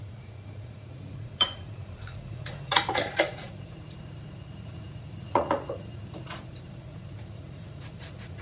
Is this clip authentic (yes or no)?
no